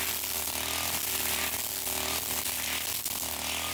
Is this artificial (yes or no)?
no